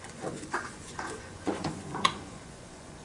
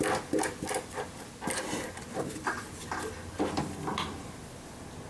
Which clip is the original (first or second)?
second